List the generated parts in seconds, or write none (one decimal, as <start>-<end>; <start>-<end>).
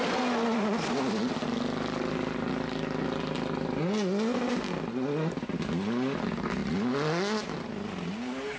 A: none